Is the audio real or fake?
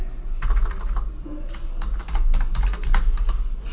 real